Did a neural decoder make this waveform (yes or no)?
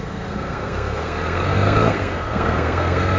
yes